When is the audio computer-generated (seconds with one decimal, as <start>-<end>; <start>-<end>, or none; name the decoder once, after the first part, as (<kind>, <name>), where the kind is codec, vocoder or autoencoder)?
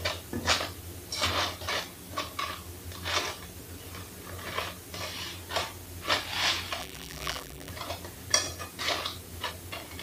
6.8-7.7 (vocoder, BigVGAN v2)